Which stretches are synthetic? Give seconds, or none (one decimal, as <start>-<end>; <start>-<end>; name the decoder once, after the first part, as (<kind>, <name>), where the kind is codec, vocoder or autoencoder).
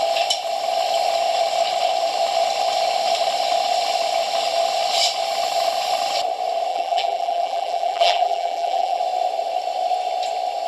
6.7-9.0 (vocoder, BigVGAN v2)